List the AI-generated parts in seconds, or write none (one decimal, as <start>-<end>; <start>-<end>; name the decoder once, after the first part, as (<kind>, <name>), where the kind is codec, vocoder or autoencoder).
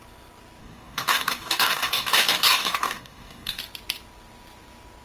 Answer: 0.6-3.6 (codec, DAC)